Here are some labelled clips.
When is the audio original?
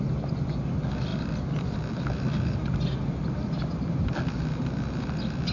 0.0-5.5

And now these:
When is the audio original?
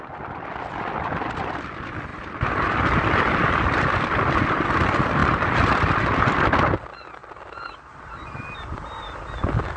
0.0-9.8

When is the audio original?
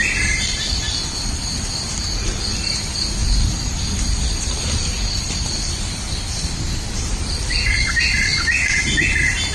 0.0-3.2; 7.8-9.5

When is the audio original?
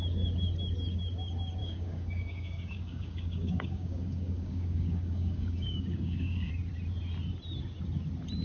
0.0-1.6; 6.5-8.4